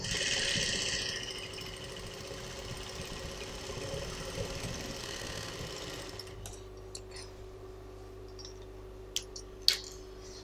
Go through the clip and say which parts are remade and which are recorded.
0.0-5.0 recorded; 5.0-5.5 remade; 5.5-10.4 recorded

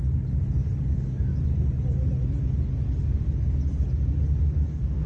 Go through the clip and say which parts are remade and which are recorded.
0.0-0.5 recorded; 0.5-1.3 remade; 1.3-4.4 recorded; 4.4-5.1 remade

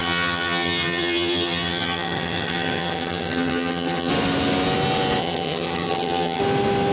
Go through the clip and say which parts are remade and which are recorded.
0.0-4.1 remade; 4.1-5.2 recorded; 5.2-6.4 remade; 6.4-6.9 recorded

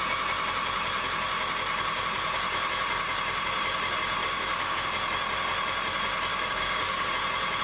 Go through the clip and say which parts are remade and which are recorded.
0.0-4.2 recorded; 4.2-4.8 remade; 4.8-6.3 recorded; 6.3-7.1 remade; 7.1-7.6 recorded

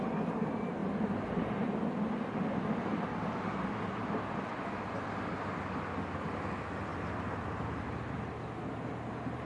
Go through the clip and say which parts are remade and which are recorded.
0.0-2.9 recorded; 2.9-5.1 remade; 5.1-6.9 recorded; 6.9-8.0 remade; 8.0-9.4 recorded

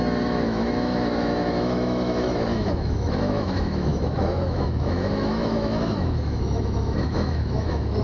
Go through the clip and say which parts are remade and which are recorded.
0.0-8.0 remade

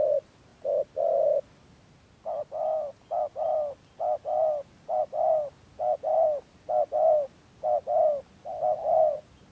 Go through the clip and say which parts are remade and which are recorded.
0.0-9.5 recorded

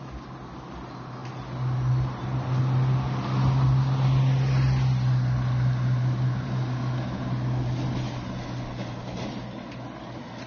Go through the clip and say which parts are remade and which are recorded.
0.0-10.5 recorded